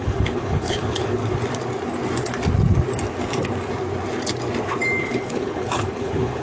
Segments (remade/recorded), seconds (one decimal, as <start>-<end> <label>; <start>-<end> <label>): 0.0-1.2 remade; 1.2-5.0 recorded; 5.0-6.4 remade